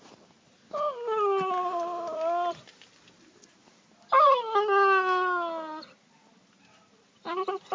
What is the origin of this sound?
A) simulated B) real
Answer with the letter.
B